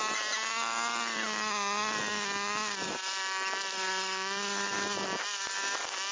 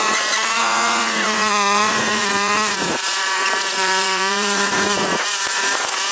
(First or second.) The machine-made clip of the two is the second